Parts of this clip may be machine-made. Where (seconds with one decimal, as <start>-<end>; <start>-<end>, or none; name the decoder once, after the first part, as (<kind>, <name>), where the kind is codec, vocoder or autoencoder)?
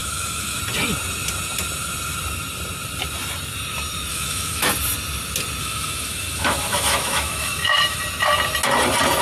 0.0-0.6 (autoencoder, DAC-VAE); 4.1-4.7; 5.6-8.0